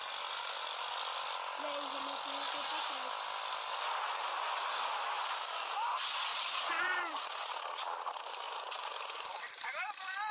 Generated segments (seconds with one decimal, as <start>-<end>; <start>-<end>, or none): 6.3-8.2